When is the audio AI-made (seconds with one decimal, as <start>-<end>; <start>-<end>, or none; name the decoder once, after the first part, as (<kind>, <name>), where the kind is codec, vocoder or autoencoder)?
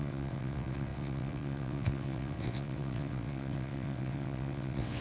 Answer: 0.0-5.0 (vocoder, WaveNeXt)